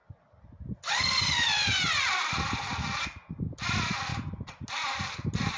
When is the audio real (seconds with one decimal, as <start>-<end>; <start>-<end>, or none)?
0.0-5.6